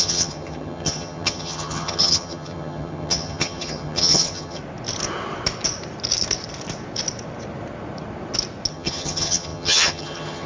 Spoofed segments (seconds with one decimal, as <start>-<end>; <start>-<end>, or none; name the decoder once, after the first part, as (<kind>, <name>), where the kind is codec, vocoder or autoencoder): 0.0-4.6 (vocoder, HiFi-GAN); 8.7-10.5